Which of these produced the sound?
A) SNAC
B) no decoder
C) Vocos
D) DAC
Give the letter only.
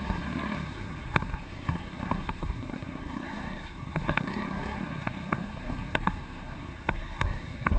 A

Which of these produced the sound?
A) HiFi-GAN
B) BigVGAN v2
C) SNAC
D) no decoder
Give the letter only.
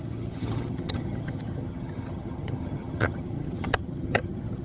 A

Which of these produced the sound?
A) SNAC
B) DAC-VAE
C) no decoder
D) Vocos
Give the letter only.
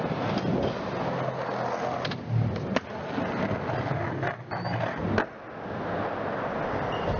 C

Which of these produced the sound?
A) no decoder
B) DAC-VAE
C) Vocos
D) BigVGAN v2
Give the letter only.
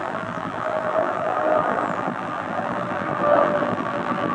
D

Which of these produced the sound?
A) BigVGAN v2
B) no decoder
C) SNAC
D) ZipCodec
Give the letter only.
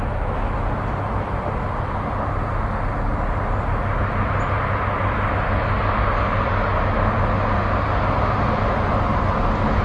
B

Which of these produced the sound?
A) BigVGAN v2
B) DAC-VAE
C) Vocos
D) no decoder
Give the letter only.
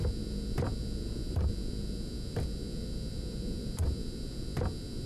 A